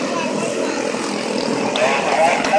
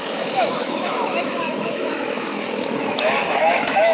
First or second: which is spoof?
second